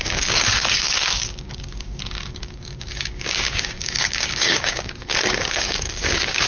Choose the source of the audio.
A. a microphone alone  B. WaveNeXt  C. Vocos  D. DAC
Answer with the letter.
D